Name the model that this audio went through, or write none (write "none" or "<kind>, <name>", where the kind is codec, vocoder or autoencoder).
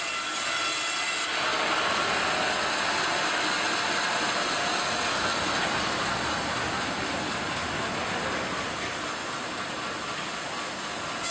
none